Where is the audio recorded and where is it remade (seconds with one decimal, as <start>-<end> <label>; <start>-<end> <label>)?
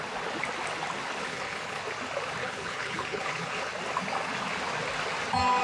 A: 0.0-1.2 recorded; 1.2-1.8 remade; 1.8-2.4 recorded; 2.4-3.7 remade; 3.7-5.6 recorded